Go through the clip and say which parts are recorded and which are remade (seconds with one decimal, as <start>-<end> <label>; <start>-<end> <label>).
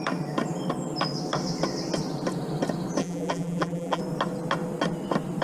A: 0.0-3.0 recorded; 3.0-4.0 remade; 4.0-5.4 recorded